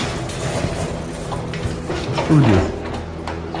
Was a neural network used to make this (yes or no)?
no